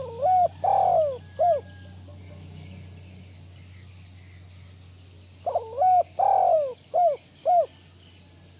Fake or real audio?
real